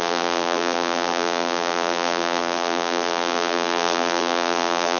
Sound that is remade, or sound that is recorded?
remade